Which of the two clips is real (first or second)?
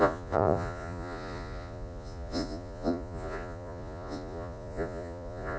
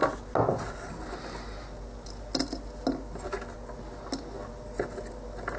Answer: second